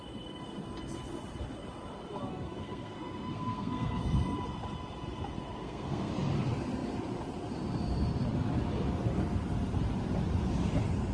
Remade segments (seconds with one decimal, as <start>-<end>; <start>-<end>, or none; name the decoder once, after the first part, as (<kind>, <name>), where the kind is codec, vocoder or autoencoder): 2.3-4.0 (codec, SNAC); 5.6-6.1